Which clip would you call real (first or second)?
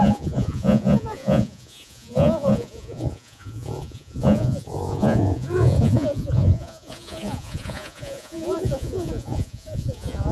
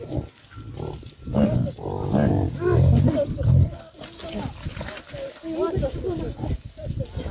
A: second